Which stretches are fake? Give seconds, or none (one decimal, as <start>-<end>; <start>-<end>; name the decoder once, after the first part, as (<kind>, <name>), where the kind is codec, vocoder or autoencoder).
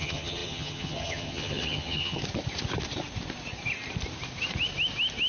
0.0-2.2 (vocoder, HiFi-GAN)